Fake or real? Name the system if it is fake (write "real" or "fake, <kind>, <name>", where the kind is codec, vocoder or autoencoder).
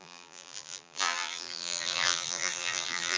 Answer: fake, vocoder, BigVGAN v2